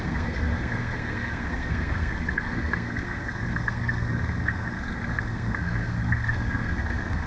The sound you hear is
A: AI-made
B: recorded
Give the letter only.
A